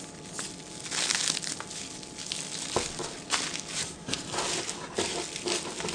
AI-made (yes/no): no